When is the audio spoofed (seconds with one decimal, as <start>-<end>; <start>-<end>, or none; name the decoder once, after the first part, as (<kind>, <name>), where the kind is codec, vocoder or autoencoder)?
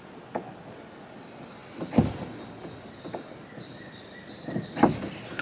none